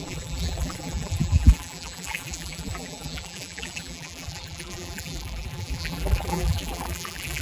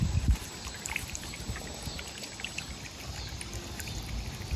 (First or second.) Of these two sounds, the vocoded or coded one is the first